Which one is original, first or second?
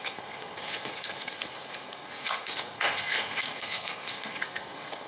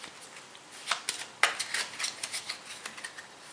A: second